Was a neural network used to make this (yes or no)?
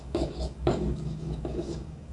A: yes